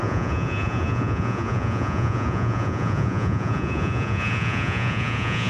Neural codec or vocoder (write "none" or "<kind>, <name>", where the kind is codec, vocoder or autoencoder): vocoder, Vocos